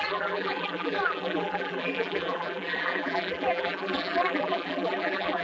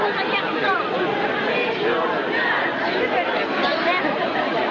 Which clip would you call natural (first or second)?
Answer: second